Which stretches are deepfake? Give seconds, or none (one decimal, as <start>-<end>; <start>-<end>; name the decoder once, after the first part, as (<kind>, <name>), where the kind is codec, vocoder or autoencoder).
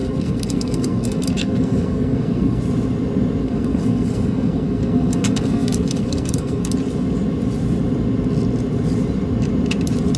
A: 0.0-2.6 (codec, SNAC); 3.4-6.7